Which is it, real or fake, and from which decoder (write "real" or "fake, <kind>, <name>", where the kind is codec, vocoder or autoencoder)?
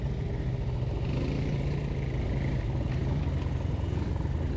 real